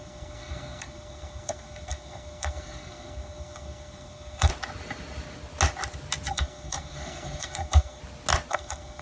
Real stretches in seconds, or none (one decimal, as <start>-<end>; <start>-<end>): 4.5-6.3; 8.0-8.5